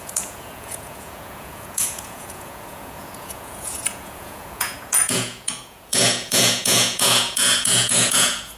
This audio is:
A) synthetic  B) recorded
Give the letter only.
A